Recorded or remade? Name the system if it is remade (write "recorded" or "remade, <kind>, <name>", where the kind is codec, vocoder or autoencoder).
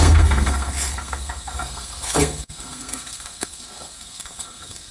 remade, codec, SNAC